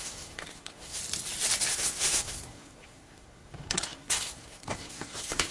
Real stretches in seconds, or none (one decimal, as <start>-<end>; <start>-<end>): 1.0-1.7